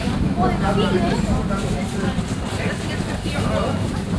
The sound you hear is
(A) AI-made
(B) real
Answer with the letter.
B